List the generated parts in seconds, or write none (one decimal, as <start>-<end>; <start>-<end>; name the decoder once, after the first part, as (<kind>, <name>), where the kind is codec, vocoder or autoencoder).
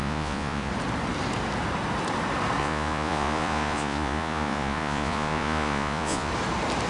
0.0-0.7 (vocoder, Vocos); 2.6-6.3